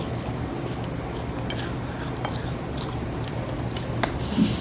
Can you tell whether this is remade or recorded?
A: recorded